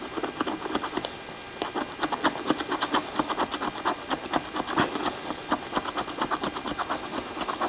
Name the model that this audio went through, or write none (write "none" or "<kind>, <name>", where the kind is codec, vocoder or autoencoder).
none